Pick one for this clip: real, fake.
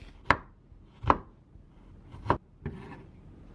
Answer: real